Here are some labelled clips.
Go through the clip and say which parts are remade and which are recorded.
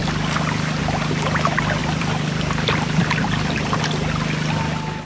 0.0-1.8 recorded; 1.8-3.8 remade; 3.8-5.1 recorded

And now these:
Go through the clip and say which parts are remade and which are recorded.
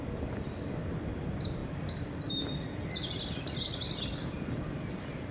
0.0-5.3 remade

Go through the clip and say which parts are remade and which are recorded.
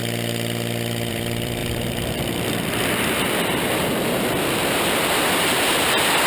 0.0-1.1 recorded; 1.1-6.3 remade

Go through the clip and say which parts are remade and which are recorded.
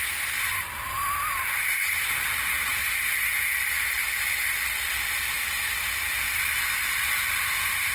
0.0-7.9 recorded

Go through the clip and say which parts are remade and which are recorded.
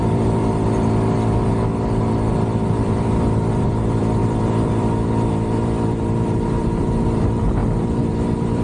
0.0-0.4 remade; 0.4-2.7 recorded; 2.7-8.6 remade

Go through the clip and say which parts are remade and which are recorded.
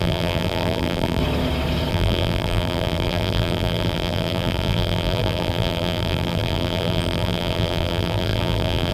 0.0-1.2 remade; 1.2-1.9 recorded; 1.9-8.9 remade